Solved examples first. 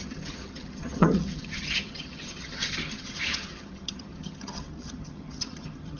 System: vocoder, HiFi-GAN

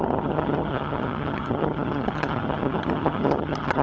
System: vocoder, HiFi-GAN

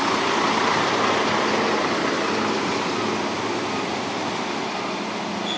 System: none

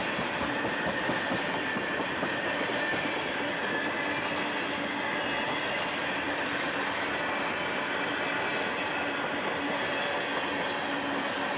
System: none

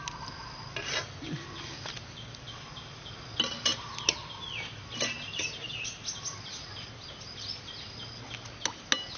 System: none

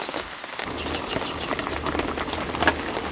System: none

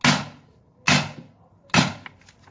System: none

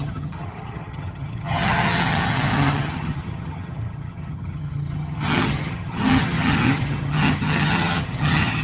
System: vocoder, HiFi-GAN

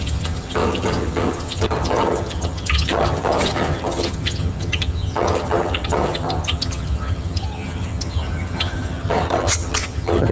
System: vocoder, HiFi-GAN